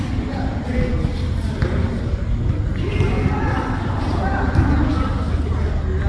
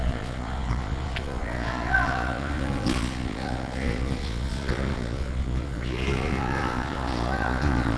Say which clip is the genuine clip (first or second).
first